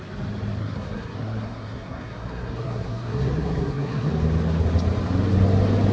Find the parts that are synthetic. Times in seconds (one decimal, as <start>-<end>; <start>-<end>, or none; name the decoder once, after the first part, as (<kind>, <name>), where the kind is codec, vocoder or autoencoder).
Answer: 0.6-4.1 (codec, SNAC)